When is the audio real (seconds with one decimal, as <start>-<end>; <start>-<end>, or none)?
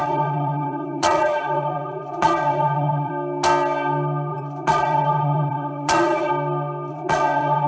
3.1-4.3; 6.3-6.9